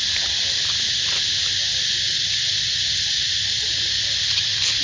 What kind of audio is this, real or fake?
real